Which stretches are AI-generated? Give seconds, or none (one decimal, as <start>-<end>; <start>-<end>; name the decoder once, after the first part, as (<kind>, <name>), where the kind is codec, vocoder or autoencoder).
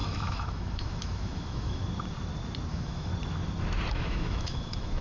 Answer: 0.0-1.8 (autoencoder, DAC-VAE); 2.7-3.1; 3.9-5.0